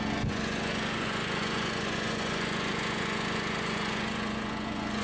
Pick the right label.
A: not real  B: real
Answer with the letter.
A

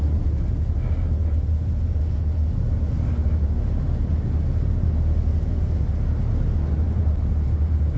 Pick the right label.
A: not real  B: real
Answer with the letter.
B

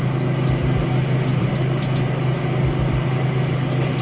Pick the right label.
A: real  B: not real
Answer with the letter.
A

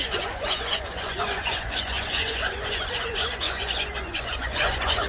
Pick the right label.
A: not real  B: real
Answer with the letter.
A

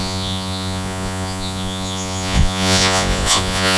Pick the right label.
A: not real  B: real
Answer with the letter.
A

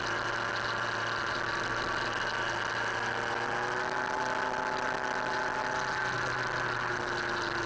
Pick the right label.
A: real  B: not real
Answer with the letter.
A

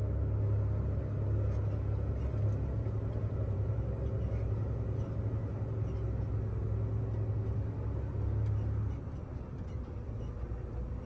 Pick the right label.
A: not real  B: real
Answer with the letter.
B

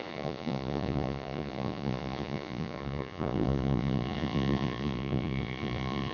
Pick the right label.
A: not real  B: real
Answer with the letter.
A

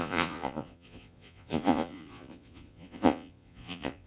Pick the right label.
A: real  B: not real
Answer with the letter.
B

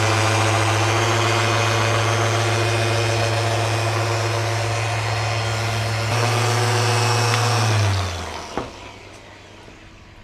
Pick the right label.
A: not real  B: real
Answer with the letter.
B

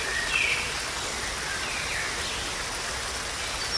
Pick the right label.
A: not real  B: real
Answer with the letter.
B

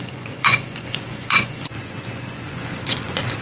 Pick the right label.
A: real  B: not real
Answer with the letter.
B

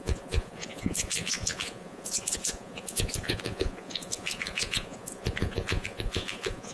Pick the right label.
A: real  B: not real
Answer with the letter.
B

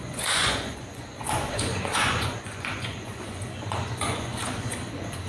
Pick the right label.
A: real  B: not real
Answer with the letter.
B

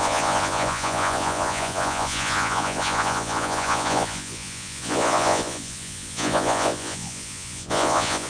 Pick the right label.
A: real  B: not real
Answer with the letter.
B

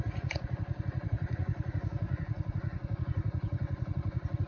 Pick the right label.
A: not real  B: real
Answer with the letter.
A